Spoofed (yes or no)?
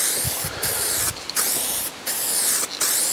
no